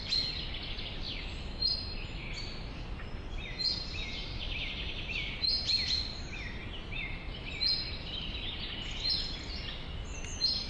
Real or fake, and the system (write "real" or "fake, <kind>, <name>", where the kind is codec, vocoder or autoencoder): real